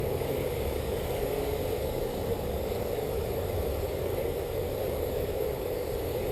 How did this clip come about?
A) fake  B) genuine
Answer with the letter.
A